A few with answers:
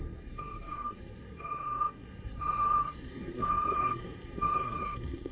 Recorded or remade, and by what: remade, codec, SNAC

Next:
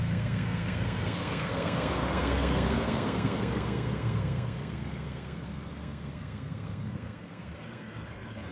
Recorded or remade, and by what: remade, codec, SNAC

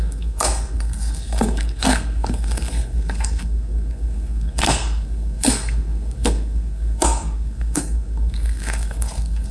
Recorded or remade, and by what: remade, codec, SNAC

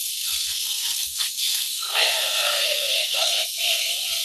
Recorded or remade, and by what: remade, codec, SNAC